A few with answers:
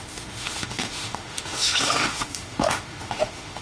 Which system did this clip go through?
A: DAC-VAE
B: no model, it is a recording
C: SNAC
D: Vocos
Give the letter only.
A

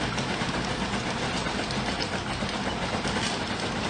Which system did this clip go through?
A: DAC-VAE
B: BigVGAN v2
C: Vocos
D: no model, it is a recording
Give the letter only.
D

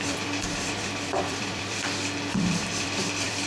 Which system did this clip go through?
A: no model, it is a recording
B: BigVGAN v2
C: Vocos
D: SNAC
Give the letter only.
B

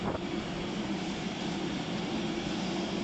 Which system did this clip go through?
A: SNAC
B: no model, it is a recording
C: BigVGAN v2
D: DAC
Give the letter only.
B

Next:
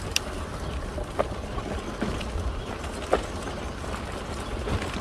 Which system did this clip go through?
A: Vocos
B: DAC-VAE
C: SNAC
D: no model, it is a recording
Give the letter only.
D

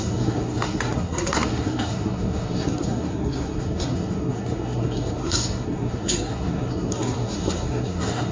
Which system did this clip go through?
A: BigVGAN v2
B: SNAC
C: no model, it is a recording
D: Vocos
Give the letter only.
B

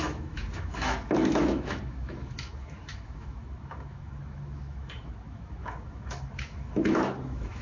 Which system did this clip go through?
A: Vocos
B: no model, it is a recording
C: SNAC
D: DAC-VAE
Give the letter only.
D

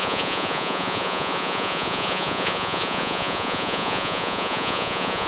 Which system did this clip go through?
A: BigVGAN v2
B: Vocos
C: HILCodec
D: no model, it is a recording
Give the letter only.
B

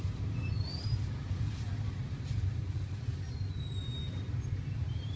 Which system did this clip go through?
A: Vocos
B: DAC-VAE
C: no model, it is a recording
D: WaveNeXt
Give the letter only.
C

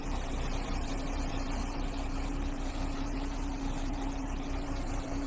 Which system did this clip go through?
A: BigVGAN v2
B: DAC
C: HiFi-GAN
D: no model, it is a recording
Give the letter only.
A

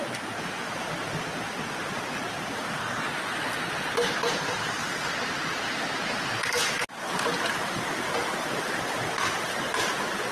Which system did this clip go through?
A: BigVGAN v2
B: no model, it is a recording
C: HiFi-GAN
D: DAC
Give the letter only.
B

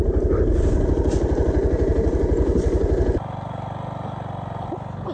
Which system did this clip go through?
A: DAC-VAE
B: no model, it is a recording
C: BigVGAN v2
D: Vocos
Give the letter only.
B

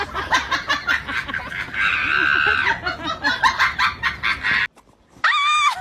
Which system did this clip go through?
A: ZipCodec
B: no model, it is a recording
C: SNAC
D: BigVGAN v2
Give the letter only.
B